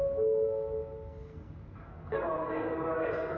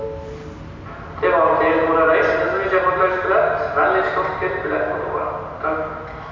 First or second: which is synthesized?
first